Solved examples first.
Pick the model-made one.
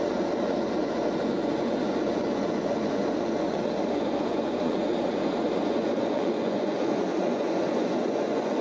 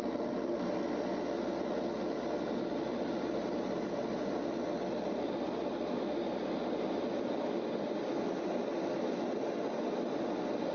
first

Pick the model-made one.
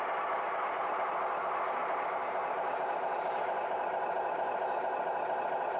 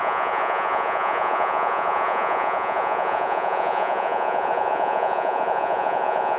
second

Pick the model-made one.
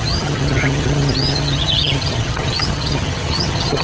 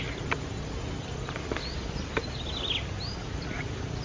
first